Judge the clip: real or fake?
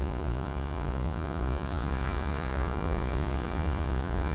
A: fake